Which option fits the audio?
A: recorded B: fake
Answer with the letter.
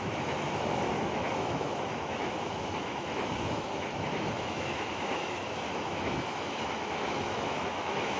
B